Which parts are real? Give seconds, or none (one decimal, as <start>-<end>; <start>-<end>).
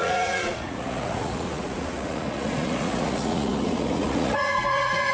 none